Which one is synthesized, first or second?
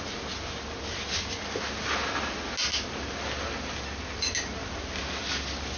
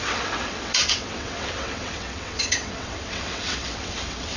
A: second